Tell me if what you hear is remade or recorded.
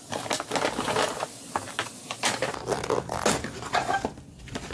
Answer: recorded